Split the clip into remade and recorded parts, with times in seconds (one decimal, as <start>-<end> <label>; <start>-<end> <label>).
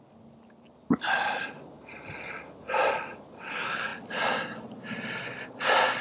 0.0-6.0 recorded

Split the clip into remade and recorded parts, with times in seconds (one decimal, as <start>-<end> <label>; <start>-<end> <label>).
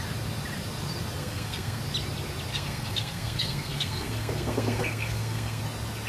0.0-1.2 recorded; 1.2-1.8 remade; 1.8-2.5 recorded; 2.5-5.6 remade; 5.6-6.1 recorded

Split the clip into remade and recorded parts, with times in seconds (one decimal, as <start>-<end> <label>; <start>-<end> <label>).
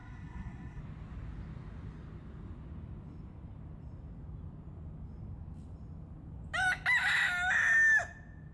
0.0-0.8 remade; 0.8-8.5 recorded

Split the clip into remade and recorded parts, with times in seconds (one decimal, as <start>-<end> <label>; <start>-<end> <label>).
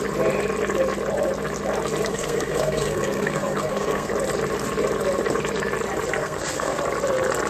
0.0-2.1 recorded; 2.1-4.1 remade; 4.1-6.2 recorded; 6.2-6.8 remade; 6.8-7.5 recorded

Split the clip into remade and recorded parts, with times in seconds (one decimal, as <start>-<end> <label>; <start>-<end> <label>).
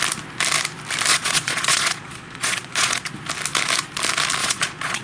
0.0-1.1 recorded; 1.1-3.1 remade; 3.1-4.4 recorded; 4.4-5.0 remade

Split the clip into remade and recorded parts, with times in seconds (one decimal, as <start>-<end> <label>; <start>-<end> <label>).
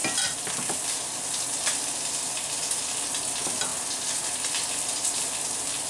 0.0-0.5 remade; 0.5-5.9 recorded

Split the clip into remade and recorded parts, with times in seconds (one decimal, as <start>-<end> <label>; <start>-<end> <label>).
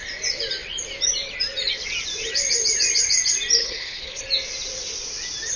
0.0-3.6 recorded; 3.6-4.2 remade; 4.2-5.6 recorded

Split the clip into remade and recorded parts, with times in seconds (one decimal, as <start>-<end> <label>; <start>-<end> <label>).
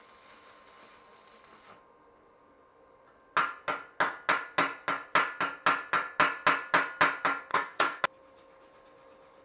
0.0-7.5 recorded; 7.5-8.0 remade; 8.0-9.4 recorded